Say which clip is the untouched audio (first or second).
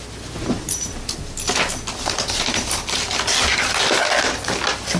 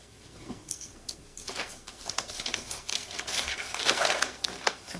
first